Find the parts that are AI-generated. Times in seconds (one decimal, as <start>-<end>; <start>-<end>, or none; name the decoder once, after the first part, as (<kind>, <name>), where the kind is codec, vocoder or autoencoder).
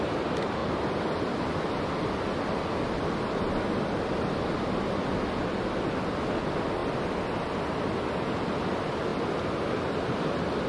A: none